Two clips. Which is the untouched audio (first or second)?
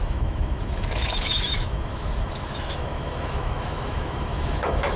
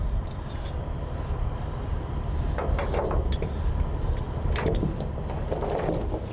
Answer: second